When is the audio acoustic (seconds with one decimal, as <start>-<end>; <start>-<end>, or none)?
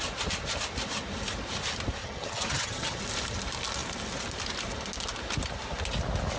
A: 0.0-2.0; 3.0-6.4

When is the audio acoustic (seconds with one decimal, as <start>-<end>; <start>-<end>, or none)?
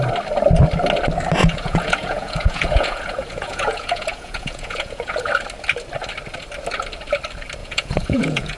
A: 0.0-1.4; 5.3-7.6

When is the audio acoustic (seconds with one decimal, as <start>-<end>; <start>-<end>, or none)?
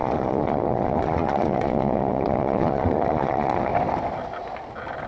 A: 3.7-5.1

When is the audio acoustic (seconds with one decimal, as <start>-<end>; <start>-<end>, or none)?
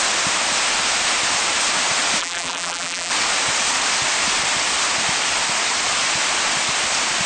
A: 0.0-2.2; 3.1-7.3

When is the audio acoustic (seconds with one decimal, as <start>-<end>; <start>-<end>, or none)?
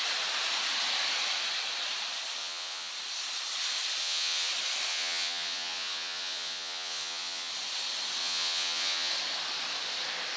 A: 0.0-2.4; 2.9-4.0; 4.5-4.9; 7.5-8.2; 9.1-10.4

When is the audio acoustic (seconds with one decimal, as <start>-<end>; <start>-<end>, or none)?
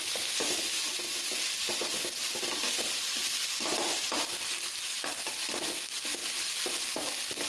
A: 0.0-7.5